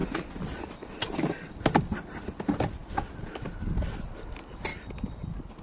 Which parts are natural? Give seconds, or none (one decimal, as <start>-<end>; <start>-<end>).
0.0-5.6